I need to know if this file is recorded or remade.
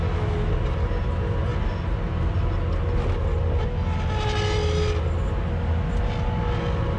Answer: recorded